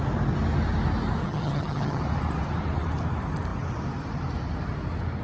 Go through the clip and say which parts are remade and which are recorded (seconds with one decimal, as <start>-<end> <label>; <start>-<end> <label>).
0.0-1.2 recorded; 1.2-2.0 remade; 2.0-5.2 recorded